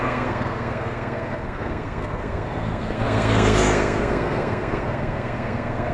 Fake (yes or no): yes